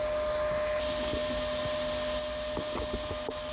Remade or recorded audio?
recorded